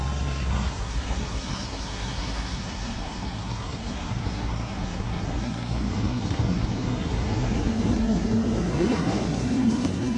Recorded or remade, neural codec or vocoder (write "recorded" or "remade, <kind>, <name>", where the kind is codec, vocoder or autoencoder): remade, codec, SNAC